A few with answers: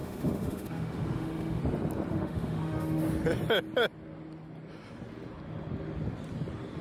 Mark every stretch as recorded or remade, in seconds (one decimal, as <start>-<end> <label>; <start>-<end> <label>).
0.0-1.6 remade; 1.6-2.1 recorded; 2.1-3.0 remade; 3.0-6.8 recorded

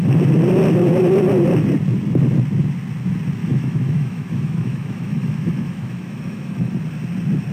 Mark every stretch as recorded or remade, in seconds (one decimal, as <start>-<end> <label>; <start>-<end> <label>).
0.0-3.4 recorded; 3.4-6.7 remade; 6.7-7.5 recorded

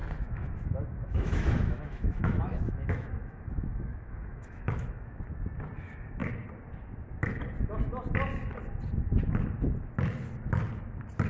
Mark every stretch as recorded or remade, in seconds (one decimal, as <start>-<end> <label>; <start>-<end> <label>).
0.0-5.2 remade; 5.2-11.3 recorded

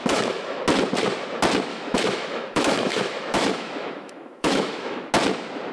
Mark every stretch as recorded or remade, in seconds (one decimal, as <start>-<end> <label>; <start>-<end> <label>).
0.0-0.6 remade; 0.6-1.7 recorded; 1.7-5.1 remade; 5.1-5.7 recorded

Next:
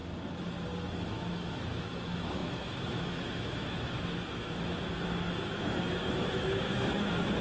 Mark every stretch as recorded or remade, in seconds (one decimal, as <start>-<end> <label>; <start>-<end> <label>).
0.0-1.0 recorded; 1.0-7.4 remade

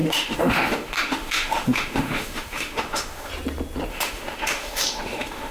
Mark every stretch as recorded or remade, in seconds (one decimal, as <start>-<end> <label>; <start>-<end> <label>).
0.0-3.3 remade; 3.3-3.9 recorded; 3.9-5.5 remade

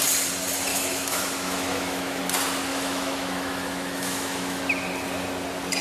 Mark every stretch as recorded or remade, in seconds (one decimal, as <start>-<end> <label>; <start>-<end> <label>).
0.0-0.7 recorded; 0.7-2.2 remade; 2.2-2.7 recorded; 2.7-4.6 remade; 4.6-5.8 recorded